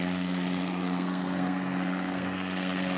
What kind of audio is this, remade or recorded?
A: remade